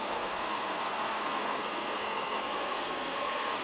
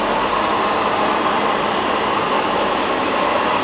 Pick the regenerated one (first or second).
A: first